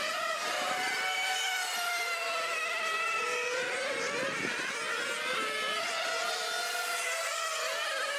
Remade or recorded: recorded